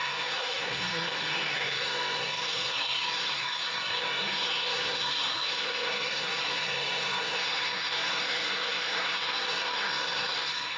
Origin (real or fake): fake